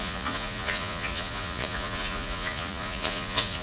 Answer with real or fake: fake